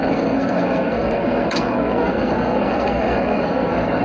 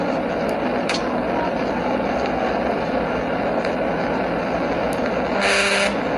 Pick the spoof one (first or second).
first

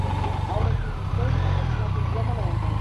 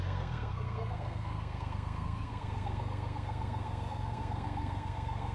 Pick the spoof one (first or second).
second